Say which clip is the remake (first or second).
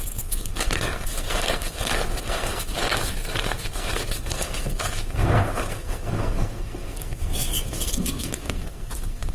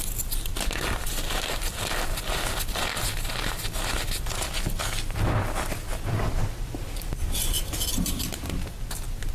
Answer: first